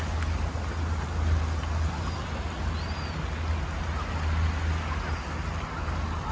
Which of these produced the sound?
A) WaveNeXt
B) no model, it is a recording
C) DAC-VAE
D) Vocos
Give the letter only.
B